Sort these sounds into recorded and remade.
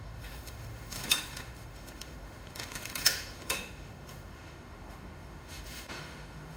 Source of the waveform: remade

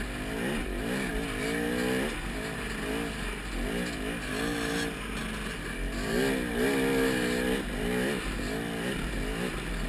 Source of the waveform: recorded